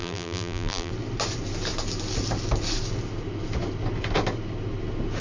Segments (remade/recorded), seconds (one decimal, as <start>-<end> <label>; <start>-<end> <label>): 0.0-0.9 remade; 0.9-5.2 recorded